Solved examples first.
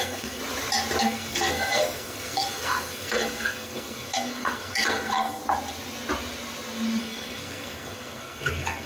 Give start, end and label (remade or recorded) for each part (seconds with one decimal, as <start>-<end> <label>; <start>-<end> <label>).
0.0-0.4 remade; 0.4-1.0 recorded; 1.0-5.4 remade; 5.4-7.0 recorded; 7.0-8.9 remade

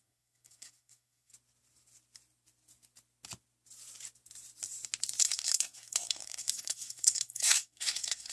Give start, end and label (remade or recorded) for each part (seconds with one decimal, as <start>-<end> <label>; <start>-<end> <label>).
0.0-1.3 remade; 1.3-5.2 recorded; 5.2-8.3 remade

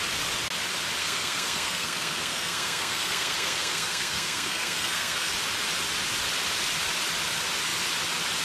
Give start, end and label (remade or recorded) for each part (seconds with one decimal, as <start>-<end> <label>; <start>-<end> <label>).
0.0-1.0 recorded; 1.0-5.3 remade; 5.3-8.4 recorded

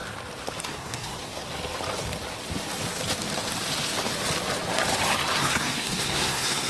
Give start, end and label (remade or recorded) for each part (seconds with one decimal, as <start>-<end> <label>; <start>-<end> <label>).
0.0-0.6 recorded; 0.6-1.4 remade; 1.4-5.4 recorded; 5.4-6.7 remade

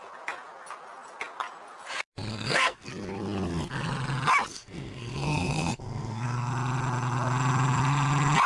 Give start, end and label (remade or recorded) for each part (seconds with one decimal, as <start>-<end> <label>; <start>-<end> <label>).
0.0-2.3 recorded; 2.3-2.9 remade; 2.9-4.5 recorded; 4.5-6.5 remade; 6.5-8.5 recorded

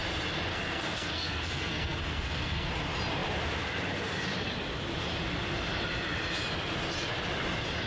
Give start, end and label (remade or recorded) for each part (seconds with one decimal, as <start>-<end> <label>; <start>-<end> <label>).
0.0-0.5 recorded; 0.5-2.7 remade; 2.7-7.9 recorded